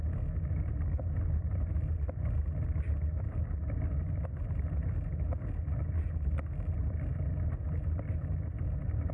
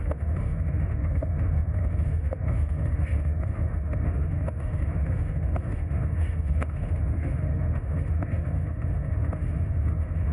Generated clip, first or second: second